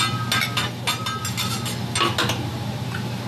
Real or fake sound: real